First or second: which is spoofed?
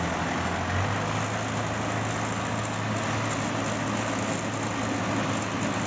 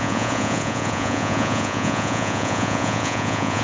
second